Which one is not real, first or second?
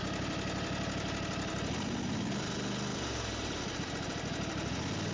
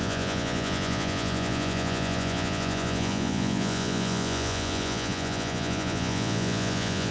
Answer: second